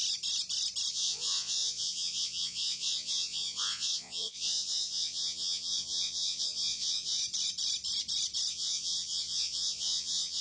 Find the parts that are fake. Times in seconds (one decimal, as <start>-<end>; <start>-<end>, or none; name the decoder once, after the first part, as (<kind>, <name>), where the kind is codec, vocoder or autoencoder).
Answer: 0.9-7.2 (vocoder, Vocos); 8.5-10.4